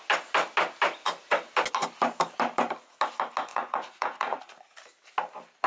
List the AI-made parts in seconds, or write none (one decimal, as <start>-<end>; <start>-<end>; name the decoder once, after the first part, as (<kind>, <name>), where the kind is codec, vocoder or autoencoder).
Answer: 3.5-4.4 (vocoder, Vocos)